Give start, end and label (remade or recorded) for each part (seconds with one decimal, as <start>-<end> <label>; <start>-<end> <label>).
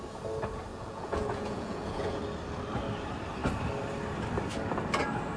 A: 0.0-0.7 recorded; 0.7-2.2 remade; 2.2-5.4 recorded